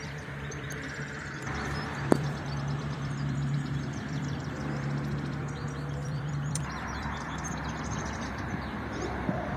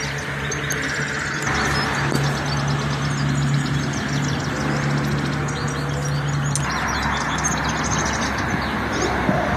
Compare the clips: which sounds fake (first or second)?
first